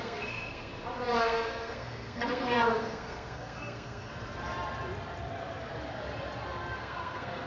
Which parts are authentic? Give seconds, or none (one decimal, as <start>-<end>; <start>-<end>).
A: 0.7-1.2; 4.1-6.8